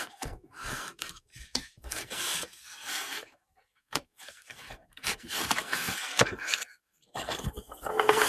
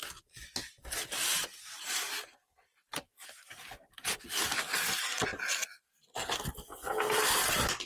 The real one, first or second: second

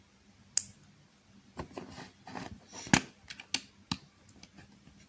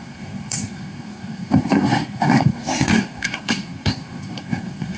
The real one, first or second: first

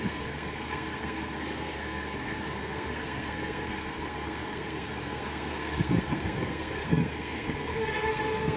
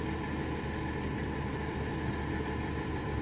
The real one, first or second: second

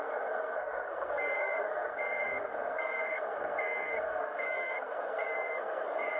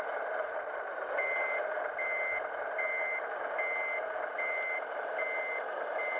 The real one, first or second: second